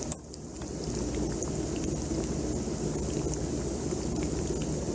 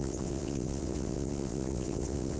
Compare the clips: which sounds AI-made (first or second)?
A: second